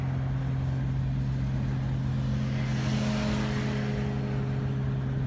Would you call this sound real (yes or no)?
yes